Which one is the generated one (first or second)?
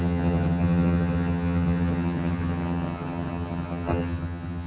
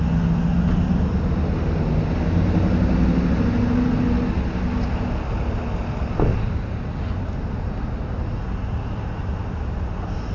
first